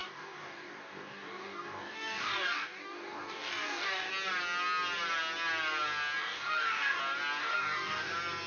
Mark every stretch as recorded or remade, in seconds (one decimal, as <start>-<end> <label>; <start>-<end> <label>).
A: 0.0-4.1 remade; 4.1-6.2 recorded; 6.2-7.0 remade; 7.0-7.4 recorded; 7.4-8.1 remade; 8.1-8.5 recorded